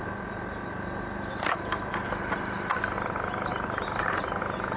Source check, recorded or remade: recorded